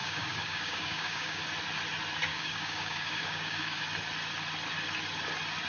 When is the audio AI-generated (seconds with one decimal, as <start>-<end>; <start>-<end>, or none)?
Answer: 0.0-1.4; 2.3-3.8